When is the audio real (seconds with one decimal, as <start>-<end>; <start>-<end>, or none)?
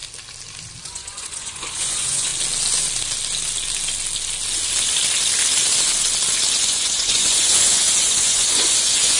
0.0-0.8; 2.3-6.5